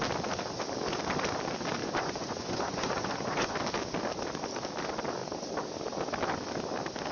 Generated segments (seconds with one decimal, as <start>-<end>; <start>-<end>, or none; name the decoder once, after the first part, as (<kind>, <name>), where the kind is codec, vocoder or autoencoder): 1.8-3.6 (vocoder, Vocos)